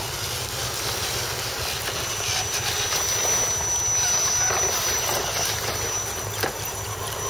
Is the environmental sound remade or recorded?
recorded